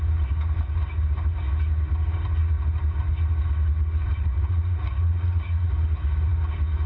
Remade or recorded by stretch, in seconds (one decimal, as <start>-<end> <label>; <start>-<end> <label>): 0.0-4.1 recorded; 4.1-5.7 remade; 5.7-6.9 recorded